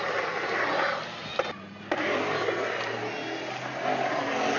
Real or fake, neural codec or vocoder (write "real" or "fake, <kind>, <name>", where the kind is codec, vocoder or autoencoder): real